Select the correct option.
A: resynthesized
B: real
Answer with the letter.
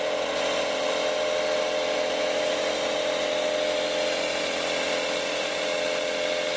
B